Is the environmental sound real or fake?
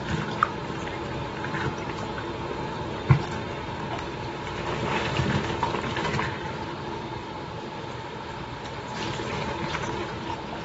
fake